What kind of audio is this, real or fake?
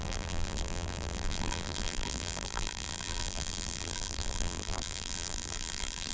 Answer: fake